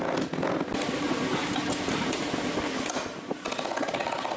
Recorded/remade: recorded